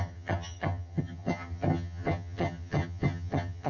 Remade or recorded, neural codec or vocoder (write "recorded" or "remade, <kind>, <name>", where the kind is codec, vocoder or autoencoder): remade, vocoder, HiFi-GAN